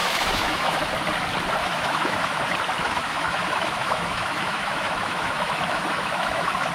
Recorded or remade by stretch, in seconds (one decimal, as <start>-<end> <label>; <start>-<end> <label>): 0.0-0.8 remade; 0.8-1.6 recorded; 1.6-2.4 remade; 2.4-2.8 recorded; 2.8-6.7 remade